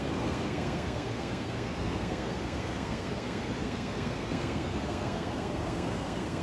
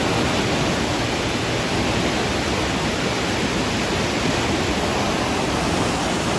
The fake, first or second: first